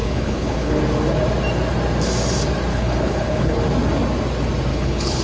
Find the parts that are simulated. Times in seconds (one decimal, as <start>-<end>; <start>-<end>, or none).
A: 0.0-0.8; 2.7-3.6; 4.7-5.2